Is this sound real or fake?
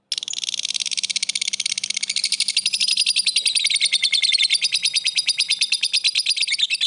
real